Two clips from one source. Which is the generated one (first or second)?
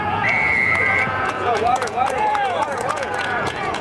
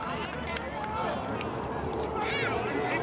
first